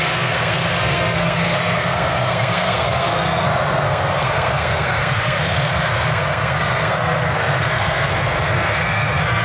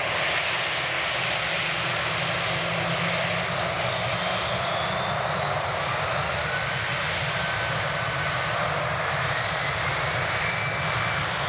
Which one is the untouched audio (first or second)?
second